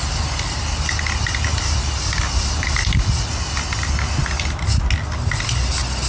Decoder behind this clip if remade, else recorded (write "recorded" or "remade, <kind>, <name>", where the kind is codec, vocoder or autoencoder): recorded